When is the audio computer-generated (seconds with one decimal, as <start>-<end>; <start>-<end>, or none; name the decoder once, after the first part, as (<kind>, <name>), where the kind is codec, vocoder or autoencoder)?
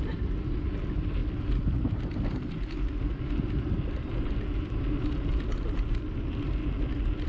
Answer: none